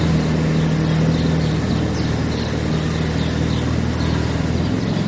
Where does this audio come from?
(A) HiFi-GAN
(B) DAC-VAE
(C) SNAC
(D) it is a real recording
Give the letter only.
D